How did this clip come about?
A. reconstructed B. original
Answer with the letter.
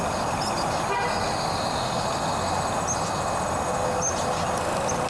B